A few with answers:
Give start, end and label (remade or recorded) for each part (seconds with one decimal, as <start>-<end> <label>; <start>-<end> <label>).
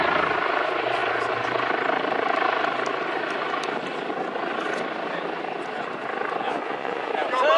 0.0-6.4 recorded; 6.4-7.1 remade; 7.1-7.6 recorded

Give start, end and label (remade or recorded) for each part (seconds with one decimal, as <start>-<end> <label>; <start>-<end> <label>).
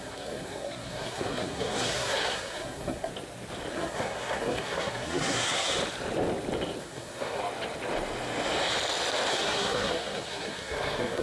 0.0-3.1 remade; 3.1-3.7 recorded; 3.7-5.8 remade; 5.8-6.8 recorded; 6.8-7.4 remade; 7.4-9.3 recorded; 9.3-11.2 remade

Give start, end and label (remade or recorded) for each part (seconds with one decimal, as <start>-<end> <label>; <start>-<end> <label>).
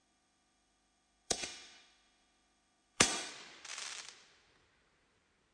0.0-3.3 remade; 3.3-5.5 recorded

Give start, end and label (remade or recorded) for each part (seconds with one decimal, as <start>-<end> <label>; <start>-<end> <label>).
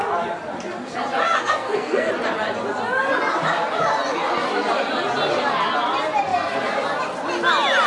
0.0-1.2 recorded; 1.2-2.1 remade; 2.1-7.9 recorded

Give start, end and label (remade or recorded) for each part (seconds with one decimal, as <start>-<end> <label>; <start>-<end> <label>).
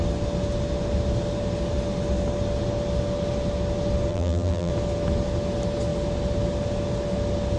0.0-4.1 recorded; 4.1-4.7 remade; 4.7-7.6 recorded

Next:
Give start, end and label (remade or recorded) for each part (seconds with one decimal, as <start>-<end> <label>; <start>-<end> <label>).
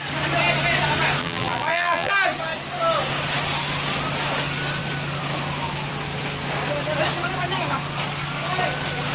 0.0-1.2 recorded; 1.2-2.1 remade; 2.1-9.1 recorded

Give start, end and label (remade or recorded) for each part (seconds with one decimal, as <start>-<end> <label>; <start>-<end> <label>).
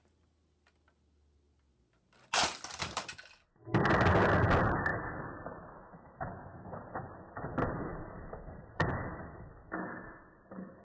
0.0-7.9 recorded; 7.9-8.9 remade; 8.9-10.8 recorded